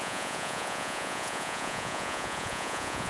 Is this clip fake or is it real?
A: fake